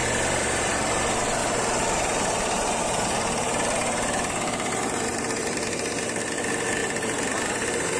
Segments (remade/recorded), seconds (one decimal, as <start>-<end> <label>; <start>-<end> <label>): 0.0-1.4 recorded; 1.4-6.2 remade; 6.2-6.8 recorded; 6.8-8.0 remade